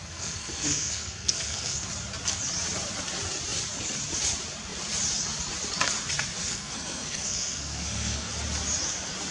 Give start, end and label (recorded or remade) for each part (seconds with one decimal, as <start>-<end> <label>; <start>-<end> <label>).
0.0-1.9 remade; 1.9-6.4 recorded; 6.4-8.3 remade; 8.3-9.3 recorded